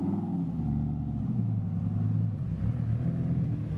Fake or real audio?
real